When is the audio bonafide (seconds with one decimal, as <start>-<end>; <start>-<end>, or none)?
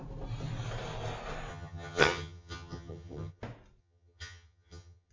0.0-1.5; 3.4-3.8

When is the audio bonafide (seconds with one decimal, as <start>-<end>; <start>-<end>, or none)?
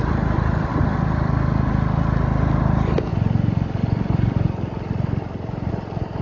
0.0-6.2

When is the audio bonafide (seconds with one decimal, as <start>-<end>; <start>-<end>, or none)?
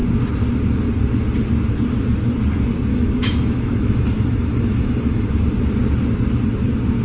0.0-2.9; 5.3-7.0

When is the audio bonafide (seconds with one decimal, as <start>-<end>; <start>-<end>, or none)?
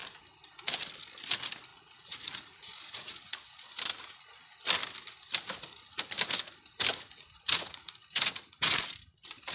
0.0-1.7; 3.6-6.9; 8.8-9.5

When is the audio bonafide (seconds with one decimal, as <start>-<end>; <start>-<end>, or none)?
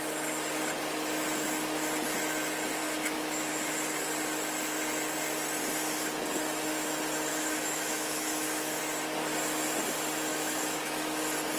0.0-2.8; 3.5-7.3; 8.8-10.3; 11.2-11.6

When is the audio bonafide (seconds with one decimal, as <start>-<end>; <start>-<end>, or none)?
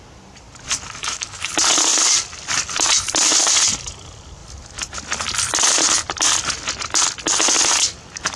0.0-1.0; 1.5-8.4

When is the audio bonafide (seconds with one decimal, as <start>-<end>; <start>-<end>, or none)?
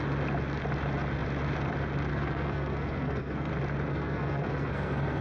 0.0-2.1; 3.5-3.9